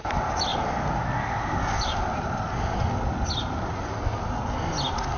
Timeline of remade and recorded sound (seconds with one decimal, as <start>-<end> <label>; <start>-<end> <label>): 0.0-5.2 recorded